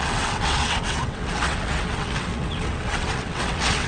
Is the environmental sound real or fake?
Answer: fake